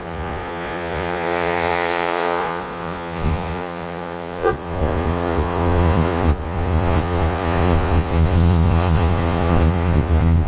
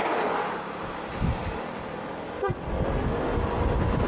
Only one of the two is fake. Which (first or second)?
first